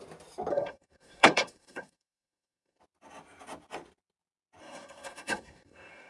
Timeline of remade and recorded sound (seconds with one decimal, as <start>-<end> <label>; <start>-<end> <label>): 0.0-0.5 recorded; 0.5-2.8 remade; 2.8-4.6 recorded; 4.6-6.1 remade

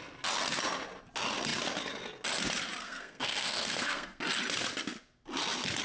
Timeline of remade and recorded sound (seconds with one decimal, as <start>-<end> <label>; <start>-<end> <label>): 0.0-2.8 recorded; 2.8-4.2 remade; 4.2-5.8 recorded

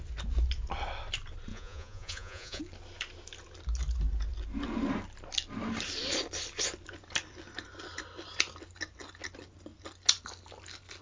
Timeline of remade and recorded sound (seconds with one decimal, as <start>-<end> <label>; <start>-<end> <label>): 0.0-1.5 recorded; 1.5-2.6 remade; 2.6-11.0 recorded

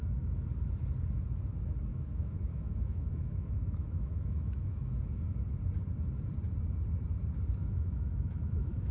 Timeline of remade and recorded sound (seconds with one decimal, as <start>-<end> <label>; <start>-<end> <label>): 0.0-1.9 recorded; 1.9-4.9 remade; 4.9-7.6 recorded; 7.6-8.9 remade